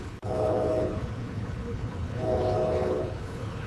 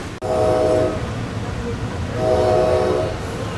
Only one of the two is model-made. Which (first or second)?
first